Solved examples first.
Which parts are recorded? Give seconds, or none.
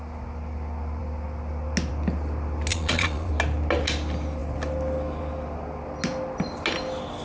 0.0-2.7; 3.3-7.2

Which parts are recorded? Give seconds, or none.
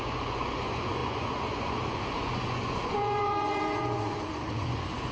none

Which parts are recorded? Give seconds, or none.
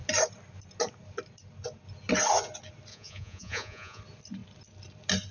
0.0-2.9; 4.0-5.3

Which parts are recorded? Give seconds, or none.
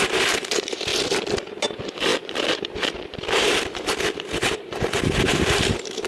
0.9-1.6